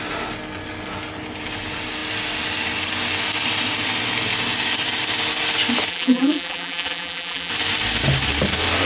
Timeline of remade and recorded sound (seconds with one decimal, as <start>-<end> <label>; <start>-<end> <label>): 0.0-5.9 recorded; 5.9-7.5 remade; 7.5-8.9 recorded

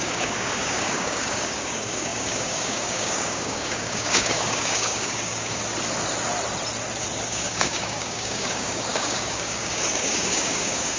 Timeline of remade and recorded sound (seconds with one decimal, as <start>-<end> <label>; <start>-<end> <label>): 0.0-5.6 remade; 5.6-7.3 recorded; 7.3-11.0 remade